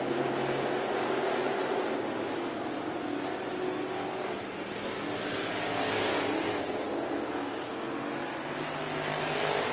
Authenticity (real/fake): real